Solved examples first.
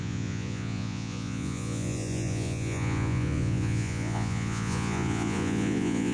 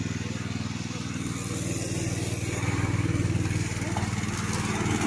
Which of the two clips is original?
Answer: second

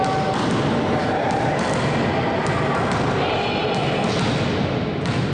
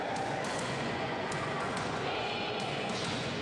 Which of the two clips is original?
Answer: first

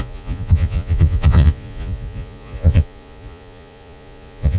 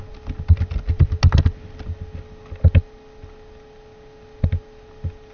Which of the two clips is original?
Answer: second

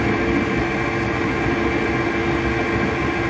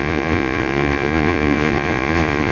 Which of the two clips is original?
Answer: first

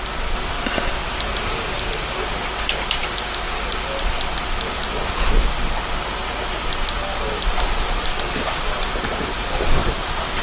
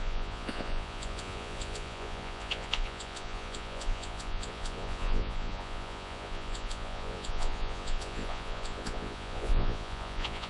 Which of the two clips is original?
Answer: first